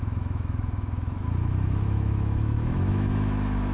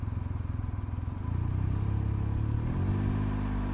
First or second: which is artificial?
first